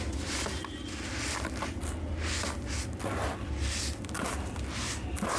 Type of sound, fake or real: real